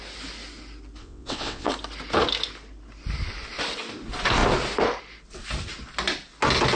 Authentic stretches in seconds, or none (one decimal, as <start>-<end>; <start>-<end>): 0.0-1.0; 1.7-6.8